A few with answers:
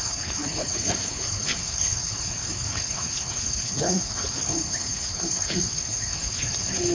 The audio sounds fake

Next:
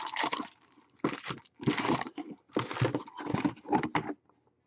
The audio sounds real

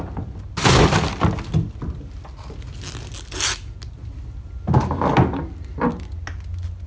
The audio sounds real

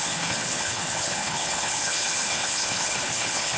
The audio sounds fake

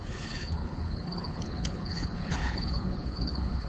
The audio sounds fake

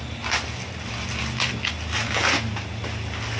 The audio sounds real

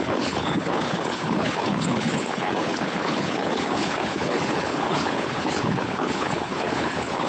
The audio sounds fake